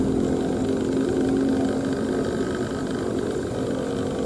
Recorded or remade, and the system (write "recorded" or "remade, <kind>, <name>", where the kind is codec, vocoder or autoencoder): recorded